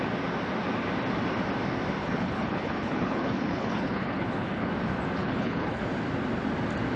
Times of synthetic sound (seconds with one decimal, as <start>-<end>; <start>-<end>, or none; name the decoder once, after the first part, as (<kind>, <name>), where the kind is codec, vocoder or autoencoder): 2.0-4.7 (codec, HILCodec); 5.2-5.8